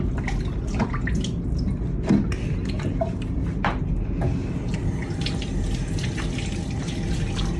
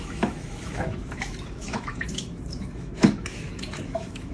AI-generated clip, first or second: second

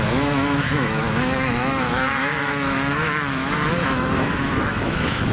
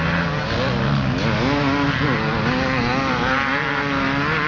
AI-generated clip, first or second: first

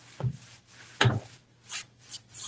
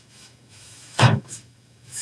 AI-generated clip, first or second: second